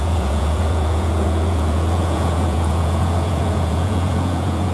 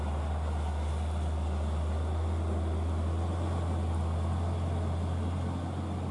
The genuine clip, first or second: second